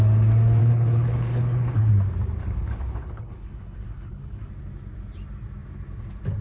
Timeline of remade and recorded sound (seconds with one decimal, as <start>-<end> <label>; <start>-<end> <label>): 0.0-0.6 recorded; 0.6-1.9 remade; 1.9-2.4 recorded; 2.4-4.5 remade; 4.5-6.4 recorded